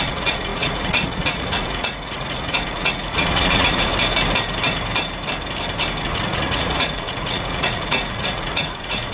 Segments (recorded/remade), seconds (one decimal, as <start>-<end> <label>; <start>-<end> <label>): 0.0-3.9 remade; 3.9-6.0 recorded; 6.0-9.1 remade